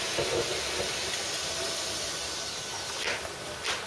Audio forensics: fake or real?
real